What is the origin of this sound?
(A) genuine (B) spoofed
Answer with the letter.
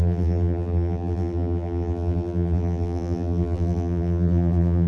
B